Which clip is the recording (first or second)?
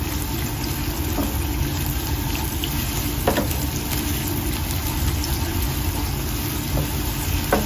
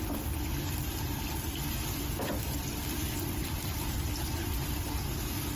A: first